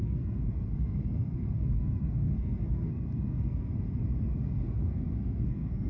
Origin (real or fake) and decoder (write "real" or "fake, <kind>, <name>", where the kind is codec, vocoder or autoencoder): fake, codec, SNAC